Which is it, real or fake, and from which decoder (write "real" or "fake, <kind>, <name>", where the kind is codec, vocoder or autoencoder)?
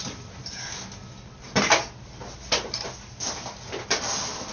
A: real